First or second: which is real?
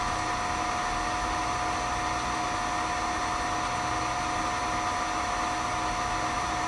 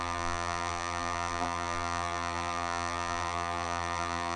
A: first